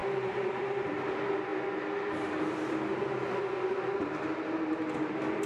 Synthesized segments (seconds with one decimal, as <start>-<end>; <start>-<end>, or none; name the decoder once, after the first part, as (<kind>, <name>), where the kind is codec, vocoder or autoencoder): 0.0-0.6 (vocoder, BigVGAN v2); 4.3-5.1